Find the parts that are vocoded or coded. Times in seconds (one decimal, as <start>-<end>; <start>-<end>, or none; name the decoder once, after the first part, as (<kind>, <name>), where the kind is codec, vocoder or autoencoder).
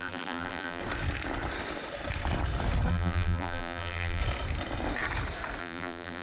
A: 0.0-0.8 (vocoder, BigVGAN v2); 2.9-4.2; 5.6-6.2